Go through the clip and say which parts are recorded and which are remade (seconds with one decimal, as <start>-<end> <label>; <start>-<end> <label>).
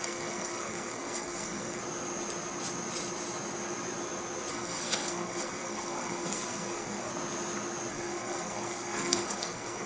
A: 0.0-1.8 remade; 1.8-4.5 recorded; 4.5-7.1 remade; 7.1-7.9 recorded; 7.9-9.9 remade